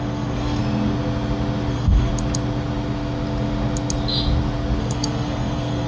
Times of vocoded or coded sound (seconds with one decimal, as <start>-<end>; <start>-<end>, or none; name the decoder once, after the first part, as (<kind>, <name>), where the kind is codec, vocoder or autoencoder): 0.0-0.6 (codec, SNAC); 1.7-2.1; 4.8-5.9